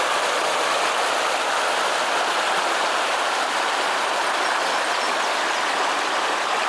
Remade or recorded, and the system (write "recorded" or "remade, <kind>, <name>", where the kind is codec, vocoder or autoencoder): recorded